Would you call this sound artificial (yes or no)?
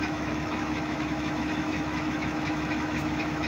yes